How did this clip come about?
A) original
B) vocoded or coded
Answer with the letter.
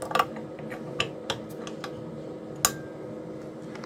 A